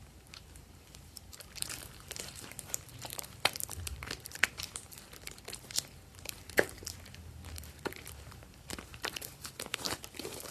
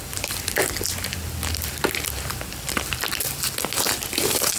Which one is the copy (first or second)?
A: first